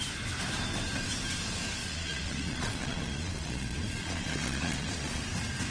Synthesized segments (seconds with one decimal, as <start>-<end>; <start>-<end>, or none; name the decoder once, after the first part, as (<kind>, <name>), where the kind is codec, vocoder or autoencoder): 1.8-5.2 (vocoder, Vocos)